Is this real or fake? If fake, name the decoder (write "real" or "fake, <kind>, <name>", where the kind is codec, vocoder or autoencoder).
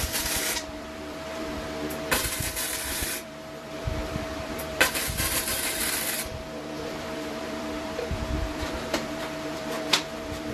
fake, vocoder, BigVGAN v2